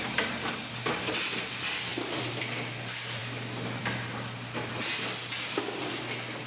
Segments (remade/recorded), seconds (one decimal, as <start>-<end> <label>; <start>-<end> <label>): 0.0-6.5 recorded